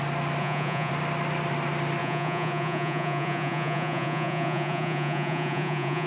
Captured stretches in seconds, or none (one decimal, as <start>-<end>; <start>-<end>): 0.0-0.4; 0.9-2.0